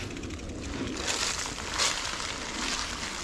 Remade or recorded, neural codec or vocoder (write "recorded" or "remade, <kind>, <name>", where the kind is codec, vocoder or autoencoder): recorded